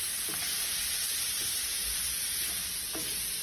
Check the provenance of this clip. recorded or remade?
remade